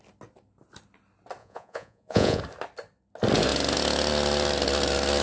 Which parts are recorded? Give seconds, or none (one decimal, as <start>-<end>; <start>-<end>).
0.0-1.4; 2.4-5.2